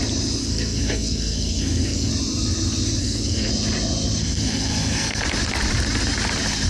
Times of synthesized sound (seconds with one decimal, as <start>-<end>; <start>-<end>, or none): 0.4-2.1; 3.0-3.5; 4.2-5.2